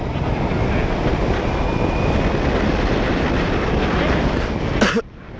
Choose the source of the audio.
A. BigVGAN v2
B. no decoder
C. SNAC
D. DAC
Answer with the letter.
B